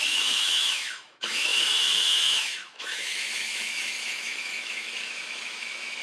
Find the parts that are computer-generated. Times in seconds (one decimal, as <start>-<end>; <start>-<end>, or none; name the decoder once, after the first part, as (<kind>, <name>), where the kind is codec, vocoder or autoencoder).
0.0-6.0 (autoencoder, DAC-VAE)